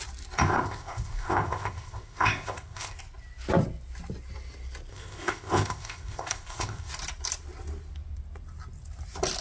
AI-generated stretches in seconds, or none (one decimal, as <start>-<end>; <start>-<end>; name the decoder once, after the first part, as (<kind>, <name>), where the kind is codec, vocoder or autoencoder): 0.4-3.0 (codec, ZipCodec); 4.9-6.9